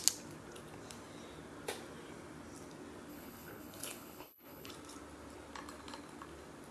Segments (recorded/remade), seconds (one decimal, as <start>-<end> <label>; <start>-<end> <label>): 0.0-3.1 recorded; 3.1-4.7 remade; 4.7-6.7 recorded